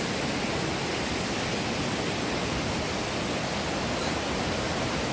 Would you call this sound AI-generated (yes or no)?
no